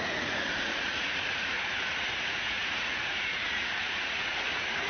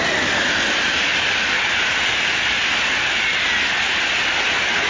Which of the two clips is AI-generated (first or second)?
first